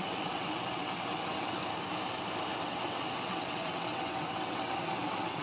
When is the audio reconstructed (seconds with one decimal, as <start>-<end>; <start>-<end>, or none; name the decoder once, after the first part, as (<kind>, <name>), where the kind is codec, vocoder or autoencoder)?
0.0-1.6 (vocoder, WaveNeXt); 2.6-5.4